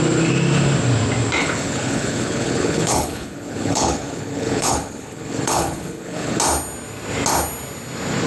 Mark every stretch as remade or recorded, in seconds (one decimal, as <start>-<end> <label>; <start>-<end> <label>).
0.0-1.4 recorded; 1.4-6.4 remade; 6.4-8.3 recorded